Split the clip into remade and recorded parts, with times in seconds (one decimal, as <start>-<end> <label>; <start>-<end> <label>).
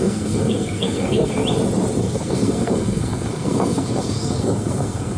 0.0-1.4 remade; 1.4-2.0 recorded; 2.0-5.2 remade